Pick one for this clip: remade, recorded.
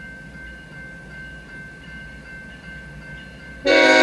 recorded